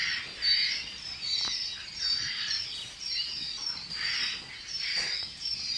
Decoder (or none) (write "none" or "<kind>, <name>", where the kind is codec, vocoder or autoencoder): none